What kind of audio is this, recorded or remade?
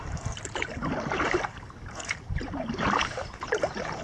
remade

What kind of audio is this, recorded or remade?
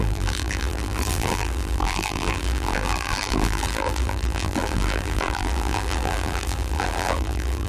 remade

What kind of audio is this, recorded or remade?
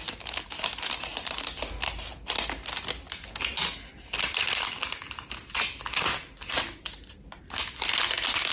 recorded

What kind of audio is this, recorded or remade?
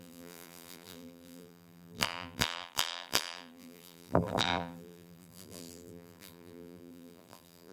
remade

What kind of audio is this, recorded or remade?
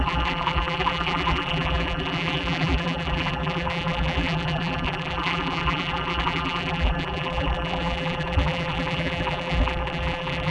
remade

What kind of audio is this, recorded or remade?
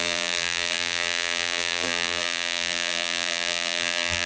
remade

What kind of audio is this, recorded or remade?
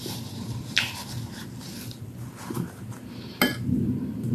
remade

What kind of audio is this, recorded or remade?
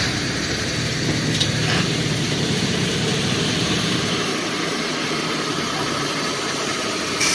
remade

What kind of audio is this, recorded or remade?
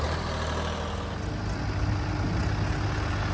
recorded